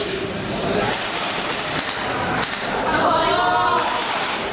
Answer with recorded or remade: recorded